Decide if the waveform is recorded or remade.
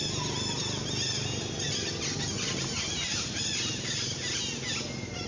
recorded